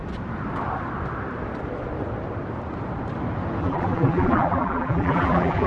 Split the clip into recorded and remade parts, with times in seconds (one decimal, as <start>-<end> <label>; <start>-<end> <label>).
0.0-3.6 recorded; 3.6-5.7 remade